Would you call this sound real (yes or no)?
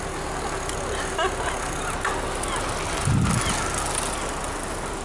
yes